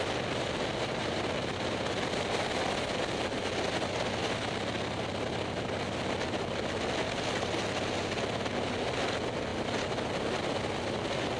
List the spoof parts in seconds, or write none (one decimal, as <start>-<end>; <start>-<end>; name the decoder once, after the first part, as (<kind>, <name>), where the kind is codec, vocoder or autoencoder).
none